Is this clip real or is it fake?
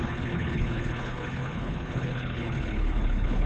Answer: fake